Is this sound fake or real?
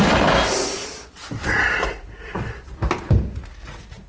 real